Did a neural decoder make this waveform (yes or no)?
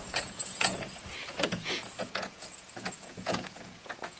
yes